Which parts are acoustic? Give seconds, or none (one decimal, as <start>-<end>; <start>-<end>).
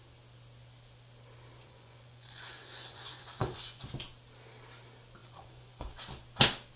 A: 0.0-1.6; 3.8-5.2; 5.9-6.8